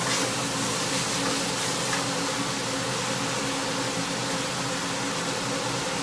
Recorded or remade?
recorded